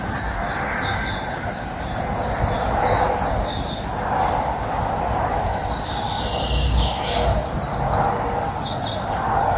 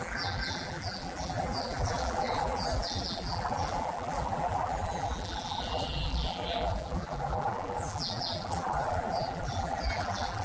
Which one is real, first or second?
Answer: first